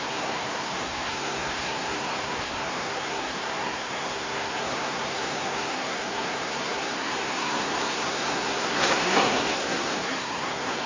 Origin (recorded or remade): remade